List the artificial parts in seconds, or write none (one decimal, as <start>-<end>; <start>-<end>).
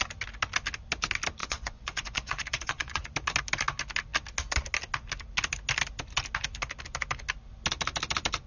1.4-3.1